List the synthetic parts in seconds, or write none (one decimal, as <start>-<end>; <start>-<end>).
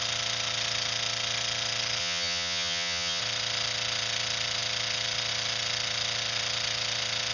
2.0-3.2